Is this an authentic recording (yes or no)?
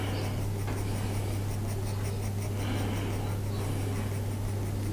yes